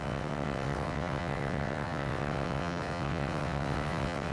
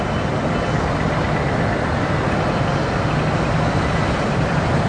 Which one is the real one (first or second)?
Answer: second